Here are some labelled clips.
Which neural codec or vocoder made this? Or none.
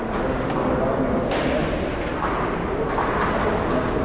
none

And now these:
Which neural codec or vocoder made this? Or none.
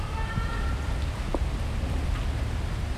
none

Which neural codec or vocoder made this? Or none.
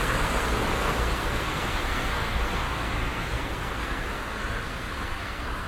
codec, SNAC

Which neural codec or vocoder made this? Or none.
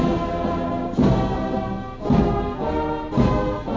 none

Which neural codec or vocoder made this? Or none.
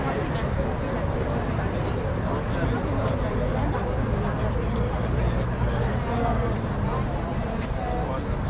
none